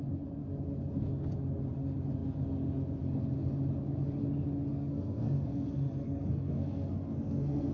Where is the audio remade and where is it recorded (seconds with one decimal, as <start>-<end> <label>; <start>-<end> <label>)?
0.0-4.7 recorded; 4.7-7.7 remade